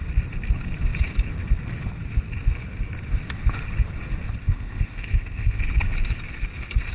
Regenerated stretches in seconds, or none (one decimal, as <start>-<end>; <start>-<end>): 4.4-5.6